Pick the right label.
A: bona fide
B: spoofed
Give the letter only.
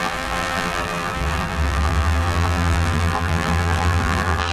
B